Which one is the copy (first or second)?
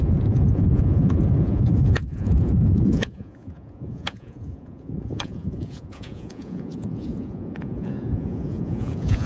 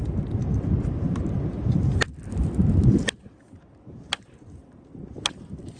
first